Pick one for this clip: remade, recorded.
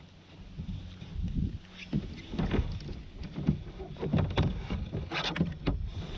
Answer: recorded